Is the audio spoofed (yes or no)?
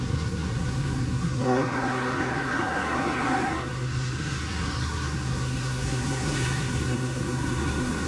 yes